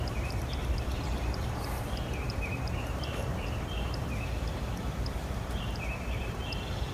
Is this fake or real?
fake